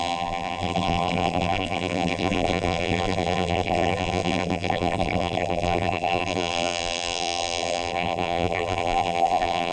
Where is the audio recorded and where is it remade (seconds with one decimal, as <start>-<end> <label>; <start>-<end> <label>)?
0.0-9.7 remade